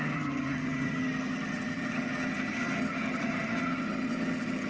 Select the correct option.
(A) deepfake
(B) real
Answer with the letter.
A